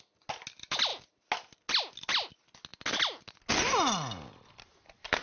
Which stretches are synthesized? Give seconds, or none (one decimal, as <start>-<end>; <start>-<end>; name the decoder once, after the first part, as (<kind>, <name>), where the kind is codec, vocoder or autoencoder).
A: none